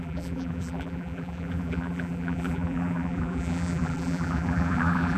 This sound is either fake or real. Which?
fake